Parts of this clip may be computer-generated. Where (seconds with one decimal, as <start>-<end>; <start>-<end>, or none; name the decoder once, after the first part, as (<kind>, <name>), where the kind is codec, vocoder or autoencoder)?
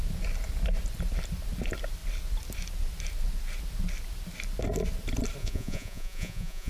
5.4-6.7 (vocoder, Vocos)